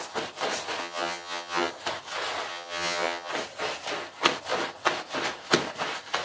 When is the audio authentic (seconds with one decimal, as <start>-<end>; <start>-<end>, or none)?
0.0-0.8; 1.7-2.5; 3.3-6.2